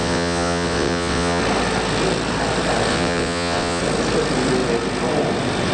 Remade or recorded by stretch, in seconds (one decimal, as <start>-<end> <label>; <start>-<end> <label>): 0.0-1.4 remade; 1.4-2.9 recorded; 2.9-3.8 remade; 3.8-5.7 recorded

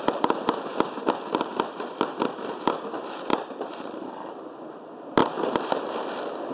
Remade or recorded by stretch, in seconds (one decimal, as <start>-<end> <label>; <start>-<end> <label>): 0.0-3.3 recorded; 3.3-4.3 remade; 4.3-5.2 recorded; 5.2-5.9 remade; 5.9-6.5 recorded

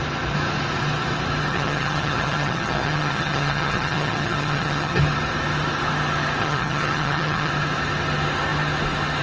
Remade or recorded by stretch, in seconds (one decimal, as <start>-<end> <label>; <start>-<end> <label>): 0.0-1.5 recorded; 1.5-5.0 remade; 5.0-6.4 recorded; 6.4-7.5 remade; 7.5-9.2 recorded